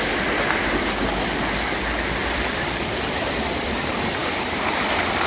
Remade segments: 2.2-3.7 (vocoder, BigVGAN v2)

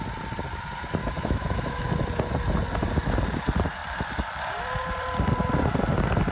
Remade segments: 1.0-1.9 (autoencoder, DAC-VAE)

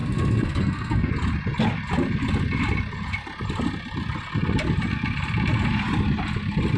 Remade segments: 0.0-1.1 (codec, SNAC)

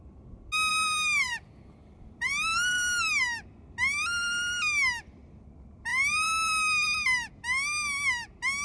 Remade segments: 0.7-2.3 (vocoder, BigVGAN v2); 5.9-7.3

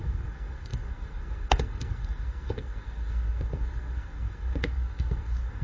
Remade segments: 0.0-5.6 (codec, SNAC)

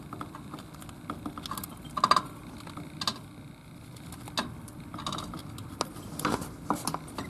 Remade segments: none

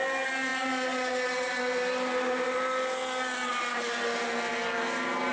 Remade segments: none